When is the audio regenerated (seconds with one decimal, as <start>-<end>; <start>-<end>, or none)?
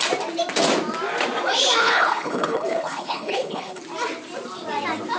1.8-3.8